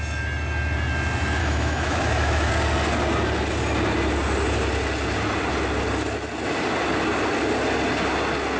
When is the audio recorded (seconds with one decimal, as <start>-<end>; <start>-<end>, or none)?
0.0-1.4; 2.5-8.6